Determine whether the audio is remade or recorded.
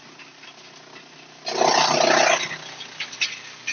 recorded